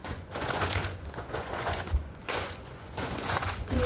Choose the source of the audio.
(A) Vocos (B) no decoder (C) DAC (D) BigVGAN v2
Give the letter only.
A